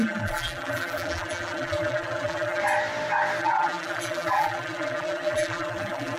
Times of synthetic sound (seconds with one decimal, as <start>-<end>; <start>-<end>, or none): 0.0-2.6; 3.4-6.2